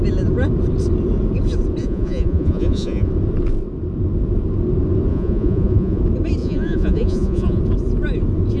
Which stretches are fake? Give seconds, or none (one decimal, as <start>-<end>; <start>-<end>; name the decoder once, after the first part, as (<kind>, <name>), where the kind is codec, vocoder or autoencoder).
1.8-3.1 (vocoder, Vocos); 5.1-6.0; 6.4-7.6